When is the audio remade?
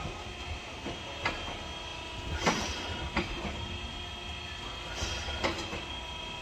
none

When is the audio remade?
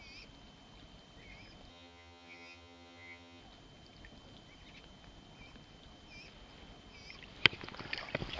1.7-3.4 (vocoder, HiFi-GAN)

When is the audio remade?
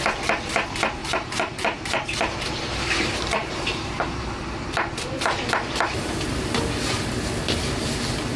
1.0-5.2 (vocoder, BigVGAN v2)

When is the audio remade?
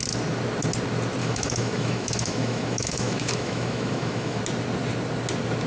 1.2-4.4 (autoencoder, DAC-VAE)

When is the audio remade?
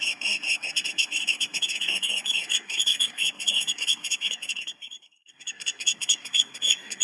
0.0-7.0 (codec, SNAC)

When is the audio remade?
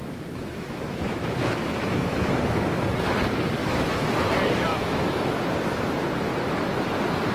0.0-3.2 (autoencoder, DAC-VAE); 3.6-4.3; 4.7-5.3